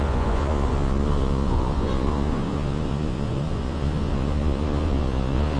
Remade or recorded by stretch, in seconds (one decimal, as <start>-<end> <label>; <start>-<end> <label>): 0.0-5.6 remade